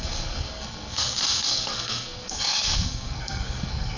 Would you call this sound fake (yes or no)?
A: yes